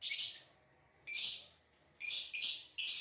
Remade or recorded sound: recorded